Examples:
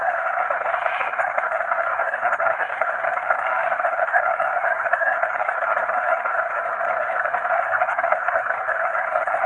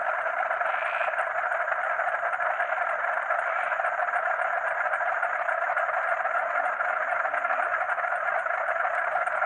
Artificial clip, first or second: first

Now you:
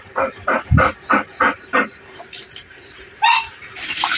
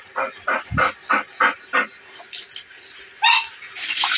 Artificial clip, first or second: first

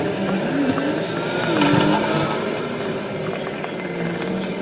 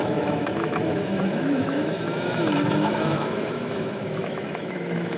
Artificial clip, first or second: second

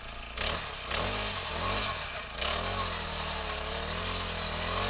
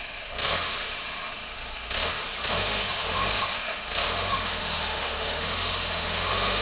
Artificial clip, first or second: second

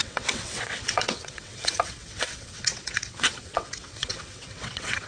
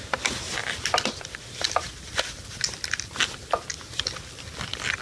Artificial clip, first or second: first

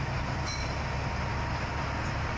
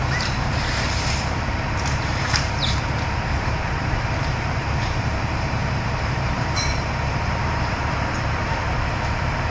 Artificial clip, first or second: second